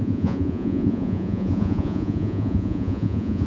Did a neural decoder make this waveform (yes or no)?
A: yes